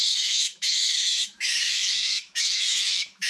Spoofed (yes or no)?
yes